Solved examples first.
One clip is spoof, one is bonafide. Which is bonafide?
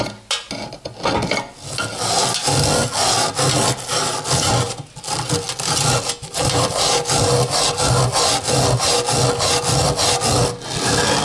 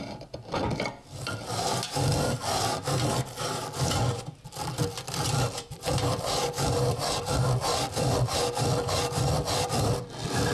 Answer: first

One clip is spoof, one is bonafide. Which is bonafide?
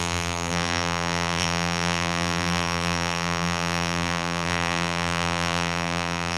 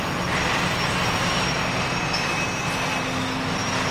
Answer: second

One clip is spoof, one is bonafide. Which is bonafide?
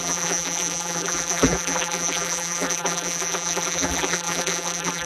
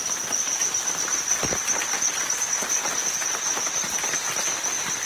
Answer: second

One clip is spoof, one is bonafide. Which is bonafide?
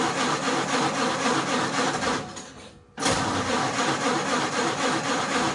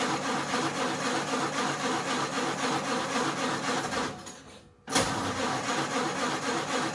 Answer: second